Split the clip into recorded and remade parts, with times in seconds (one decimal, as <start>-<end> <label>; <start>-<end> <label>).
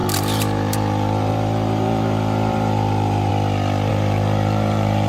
0.0-3.3 remade; 3.3-3.9 recorded; 3.9-5.1 remade